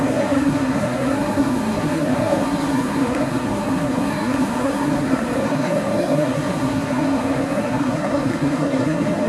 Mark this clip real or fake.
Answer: fake